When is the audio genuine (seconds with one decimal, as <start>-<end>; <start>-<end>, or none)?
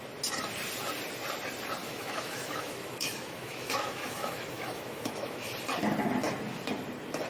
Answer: 0.0-1.8; 5.5-7.3